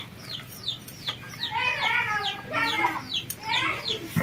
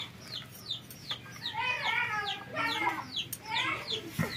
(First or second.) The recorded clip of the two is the second